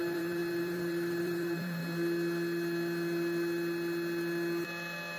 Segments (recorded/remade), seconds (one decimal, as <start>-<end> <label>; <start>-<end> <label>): 0.0-1.8 remade; 1.8-5.2 recorded